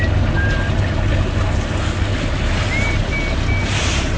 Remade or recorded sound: recorded